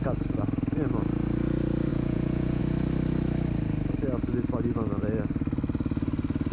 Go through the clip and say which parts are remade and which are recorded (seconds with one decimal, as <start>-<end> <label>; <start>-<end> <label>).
0.0-1.9 recorded; 1.9-2.6 remade; 2.6-6.5 recorded